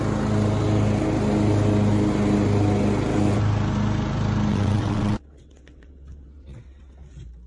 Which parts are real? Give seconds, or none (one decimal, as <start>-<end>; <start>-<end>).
0.0-4.5; 7.1-7.5